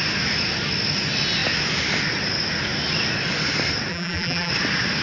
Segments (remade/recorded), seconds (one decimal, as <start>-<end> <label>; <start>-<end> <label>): 0.0-3.9 recorded; 3.9-4.5 remade; 4.5-5.0 recorded